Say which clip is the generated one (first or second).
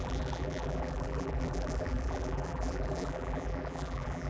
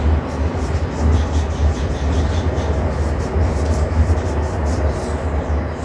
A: first